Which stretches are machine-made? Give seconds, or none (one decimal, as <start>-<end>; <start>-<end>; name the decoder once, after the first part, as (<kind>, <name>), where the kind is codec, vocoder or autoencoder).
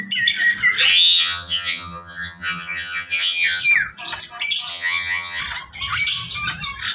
0.9-3.6 (vocoder, HiFi-GAN); 4.7-5.4